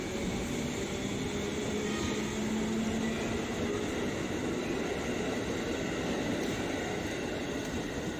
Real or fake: real